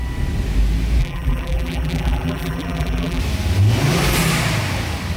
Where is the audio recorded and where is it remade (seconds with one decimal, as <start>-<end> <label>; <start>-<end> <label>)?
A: 0.0-1.0 recorded; 1.0-3.2 remade; 3.2-5.2 recorded